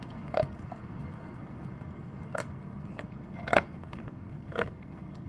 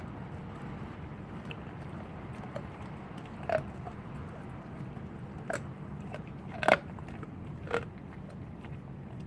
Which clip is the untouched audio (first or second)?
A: second